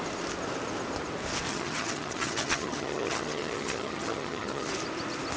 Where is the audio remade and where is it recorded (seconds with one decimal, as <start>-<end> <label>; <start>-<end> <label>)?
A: 0.0-1.5 recorded; 1.5-4.7 remade; 4.7-5.4 recorded